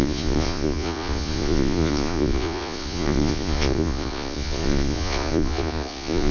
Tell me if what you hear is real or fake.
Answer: fake